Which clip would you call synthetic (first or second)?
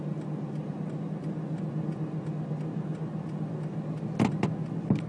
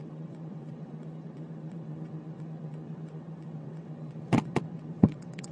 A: second